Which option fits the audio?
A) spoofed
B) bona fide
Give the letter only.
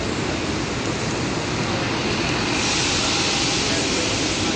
B